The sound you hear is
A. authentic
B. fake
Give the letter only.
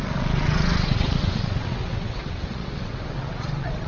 B